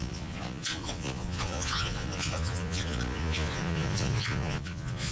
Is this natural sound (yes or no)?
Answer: no